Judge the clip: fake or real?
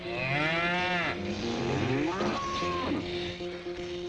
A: real